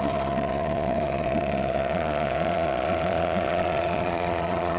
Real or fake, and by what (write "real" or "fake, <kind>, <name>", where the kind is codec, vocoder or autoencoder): fake, vocoder, Vocos